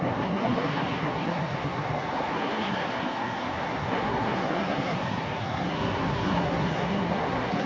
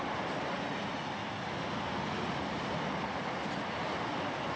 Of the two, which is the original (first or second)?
second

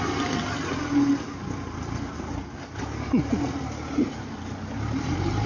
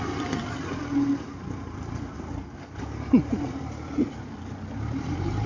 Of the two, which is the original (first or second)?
first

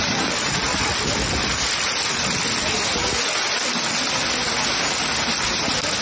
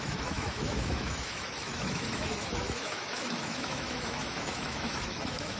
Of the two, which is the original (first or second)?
first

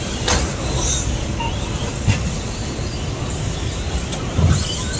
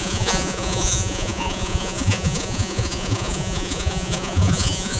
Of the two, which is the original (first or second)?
first